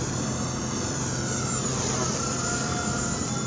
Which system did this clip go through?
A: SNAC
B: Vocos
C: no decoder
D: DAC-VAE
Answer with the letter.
C